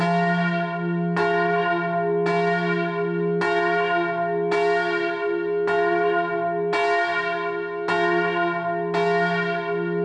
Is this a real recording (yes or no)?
yes